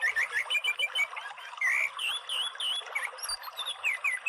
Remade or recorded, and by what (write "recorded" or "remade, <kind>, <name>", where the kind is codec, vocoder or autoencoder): recorded